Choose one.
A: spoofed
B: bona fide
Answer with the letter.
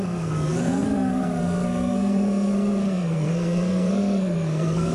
A